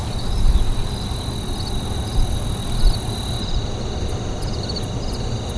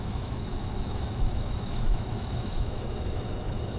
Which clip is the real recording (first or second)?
first